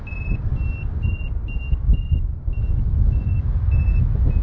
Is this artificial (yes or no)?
no